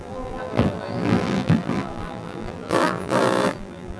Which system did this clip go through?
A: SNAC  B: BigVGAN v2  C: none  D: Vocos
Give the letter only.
B